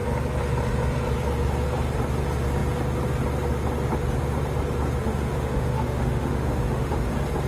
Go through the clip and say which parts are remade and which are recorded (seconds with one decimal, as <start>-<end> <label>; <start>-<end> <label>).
0.0-5.0 recorded; 5.0-7.1 remade; 7.1-7.5 recorded